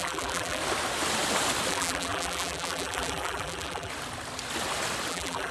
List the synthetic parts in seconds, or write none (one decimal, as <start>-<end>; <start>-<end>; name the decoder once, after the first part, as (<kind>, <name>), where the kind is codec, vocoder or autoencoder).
0.0-0.6 (vocoder, BigVGAN v2); 1.7-3.9; 5.1-5.5